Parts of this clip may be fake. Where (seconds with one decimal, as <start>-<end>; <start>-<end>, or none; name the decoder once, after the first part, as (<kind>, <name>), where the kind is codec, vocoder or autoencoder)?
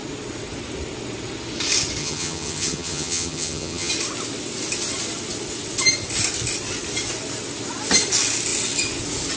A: 2.0-3.9 (vocoder, HiFi-GAN)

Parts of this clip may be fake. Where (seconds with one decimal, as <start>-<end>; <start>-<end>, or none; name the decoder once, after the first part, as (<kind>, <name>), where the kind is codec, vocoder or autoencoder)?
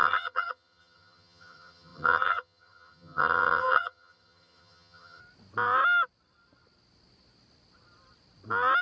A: 0.0-5.2 (vocoder, HiFi-GAN)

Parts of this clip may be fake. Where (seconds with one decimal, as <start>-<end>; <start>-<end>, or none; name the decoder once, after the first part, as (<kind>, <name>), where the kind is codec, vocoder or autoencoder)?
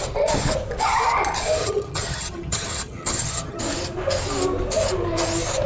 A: 1.6-3.6 (vocoder, HiFi-GAN)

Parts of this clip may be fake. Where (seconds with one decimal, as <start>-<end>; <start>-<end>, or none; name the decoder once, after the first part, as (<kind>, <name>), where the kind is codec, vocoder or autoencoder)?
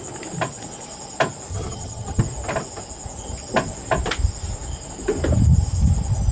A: 1.5-2.2 (vocoder, HiFi-GAN)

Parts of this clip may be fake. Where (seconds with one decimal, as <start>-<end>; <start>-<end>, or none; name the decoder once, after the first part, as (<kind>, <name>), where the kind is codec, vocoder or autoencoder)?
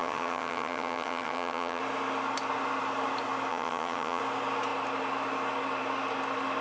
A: 0.0-1.8 (vocoder, HiFi-GAN); 3.5-4.2